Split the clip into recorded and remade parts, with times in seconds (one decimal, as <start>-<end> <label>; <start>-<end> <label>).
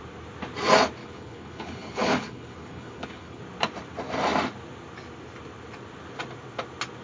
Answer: 0.0-1.0 recorded; 1.0-3.4 remade; 3.4-7.0 recorded